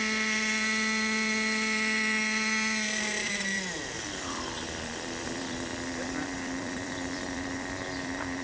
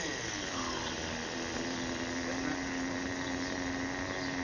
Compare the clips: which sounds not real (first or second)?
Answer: first